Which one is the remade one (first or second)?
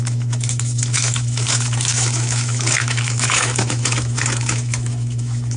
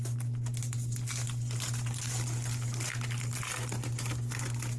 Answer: first